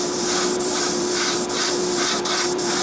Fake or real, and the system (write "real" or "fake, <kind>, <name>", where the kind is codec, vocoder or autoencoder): fake, vocoder, BigVGAN v2